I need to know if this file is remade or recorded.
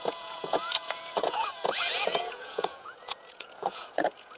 remade